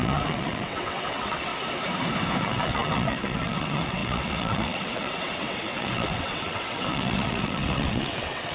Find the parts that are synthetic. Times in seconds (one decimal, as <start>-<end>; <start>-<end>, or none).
0.0-1.5; 2.4-8.5